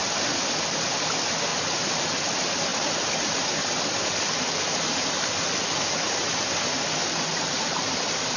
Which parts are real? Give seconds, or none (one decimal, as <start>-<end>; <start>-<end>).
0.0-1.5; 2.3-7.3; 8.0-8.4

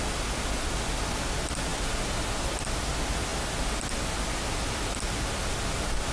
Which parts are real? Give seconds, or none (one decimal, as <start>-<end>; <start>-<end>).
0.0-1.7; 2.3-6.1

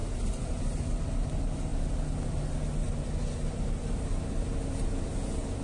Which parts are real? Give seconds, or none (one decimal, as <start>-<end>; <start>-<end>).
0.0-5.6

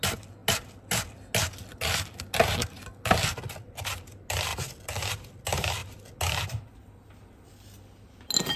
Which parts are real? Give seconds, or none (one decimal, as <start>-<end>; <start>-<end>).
0.0-8.6

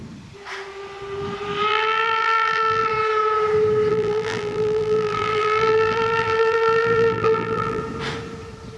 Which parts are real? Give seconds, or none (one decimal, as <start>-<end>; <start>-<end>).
0.0-1.7; 2.9-3.9; 7.8-8.8